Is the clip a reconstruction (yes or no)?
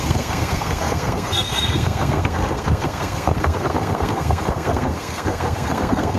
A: yes